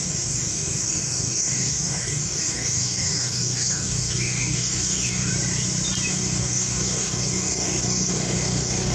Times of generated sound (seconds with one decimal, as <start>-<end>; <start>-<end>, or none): 0.0-5.3; 6.1-8.9